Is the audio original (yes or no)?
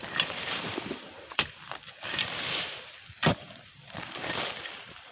no